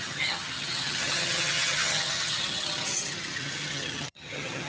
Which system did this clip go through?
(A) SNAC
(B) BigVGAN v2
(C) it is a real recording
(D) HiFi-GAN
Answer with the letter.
D